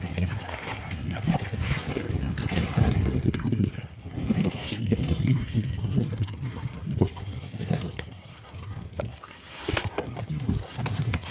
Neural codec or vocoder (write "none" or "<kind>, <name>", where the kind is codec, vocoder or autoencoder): codec, SNAC